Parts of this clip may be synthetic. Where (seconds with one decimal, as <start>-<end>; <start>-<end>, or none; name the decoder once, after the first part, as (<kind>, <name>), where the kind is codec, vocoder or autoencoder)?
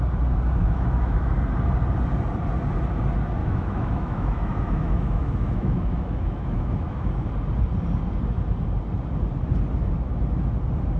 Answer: 0.6-1.3 (autoencoder, DAC-VAE); 3.4-7.3